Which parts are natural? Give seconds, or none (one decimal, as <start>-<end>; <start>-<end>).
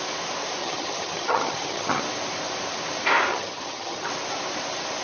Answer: 0.0-0.6; 2.0-3.3; 4.1-5.0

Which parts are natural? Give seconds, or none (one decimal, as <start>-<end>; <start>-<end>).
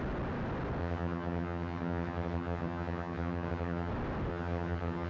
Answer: 0.0-0.8; 3.9-4.3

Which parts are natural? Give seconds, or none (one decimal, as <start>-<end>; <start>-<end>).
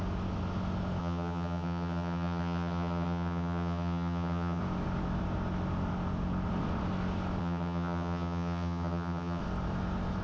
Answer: 0.0-1.0; 4.6-7.4; 9.4-10.2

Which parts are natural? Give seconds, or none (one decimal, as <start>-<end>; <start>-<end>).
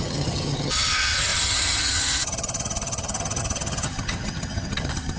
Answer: none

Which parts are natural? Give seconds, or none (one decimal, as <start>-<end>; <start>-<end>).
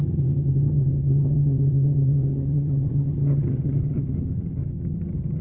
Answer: none